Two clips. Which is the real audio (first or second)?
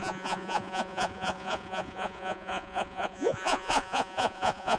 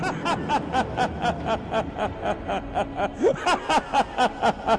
second